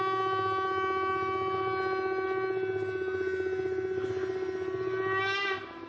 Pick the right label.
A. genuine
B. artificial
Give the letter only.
A